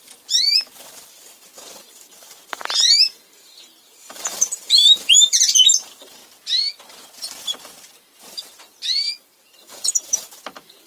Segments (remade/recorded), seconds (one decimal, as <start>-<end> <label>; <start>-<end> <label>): 0.0-6.2 remade; 6.2-8.6 recorded; 8.6-10.9 remade